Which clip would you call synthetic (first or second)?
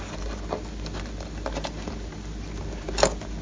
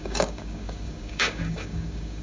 second